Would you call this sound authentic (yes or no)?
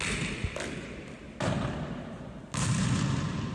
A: yes